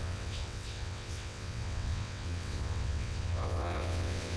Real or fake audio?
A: fake